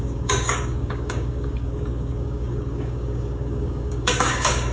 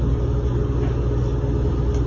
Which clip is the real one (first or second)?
second